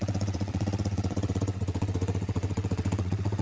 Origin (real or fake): fake